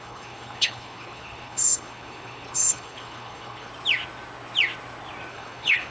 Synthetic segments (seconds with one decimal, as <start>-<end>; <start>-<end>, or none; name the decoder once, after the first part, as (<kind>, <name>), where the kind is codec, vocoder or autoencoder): 0.0-3.7 (codec, HILCodec); 5.3-5.9

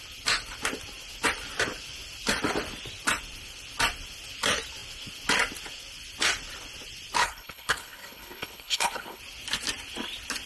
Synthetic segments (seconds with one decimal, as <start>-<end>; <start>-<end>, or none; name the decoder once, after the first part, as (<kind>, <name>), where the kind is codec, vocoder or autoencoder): 7.2-9.2 (codec, HILCodec)

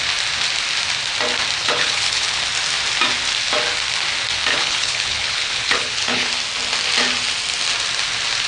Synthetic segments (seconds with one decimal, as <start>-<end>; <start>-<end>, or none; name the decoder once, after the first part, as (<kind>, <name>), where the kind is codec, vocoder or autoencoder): 1.6-2.4 (codec, HILCodec); 4.5-6.3

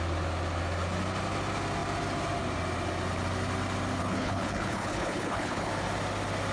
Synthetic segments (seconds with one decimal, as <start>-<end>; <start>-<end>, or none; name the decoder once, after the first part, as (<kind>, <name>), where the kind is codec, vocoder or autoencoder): 4.0-5.7 (codec, HILCodec)

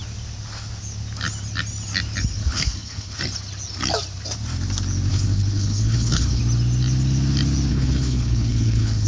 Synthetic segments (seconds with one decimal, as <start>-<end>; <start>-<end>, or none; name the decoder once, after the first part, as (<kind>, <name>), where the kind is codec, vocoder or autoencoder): 2.4-3.2 (codec, HILCodec); 5.1-6.4; 7.7-9.1

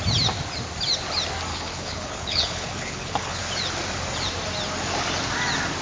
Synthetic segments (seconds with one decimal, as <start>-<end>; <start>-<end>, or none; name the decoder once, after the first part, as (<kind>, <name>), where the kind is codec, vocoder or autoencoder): 1.5-3.4 (codec, HILCodec)

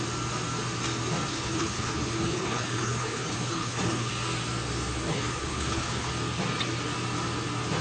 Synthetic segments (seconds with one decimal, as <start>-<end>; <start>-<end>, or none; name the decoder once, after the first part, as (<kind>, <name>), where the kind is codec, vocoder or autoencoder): 1.3-4.1 (codec, HILCodec); 5.1-6.1